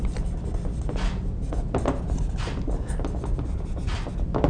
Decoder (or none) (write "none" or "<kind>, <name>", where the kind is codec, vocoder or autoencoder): none